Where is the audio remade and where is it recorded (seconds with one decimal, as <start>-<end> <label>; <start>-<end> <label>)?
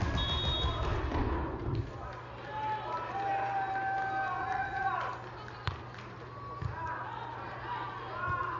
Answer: 0.0-4.4 recorded; 4.4-4.9 remade; 4.9-8.6 recorded